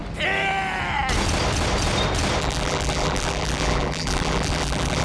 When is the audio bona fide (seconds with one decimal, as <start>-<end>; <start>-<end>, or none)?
0.0-2.4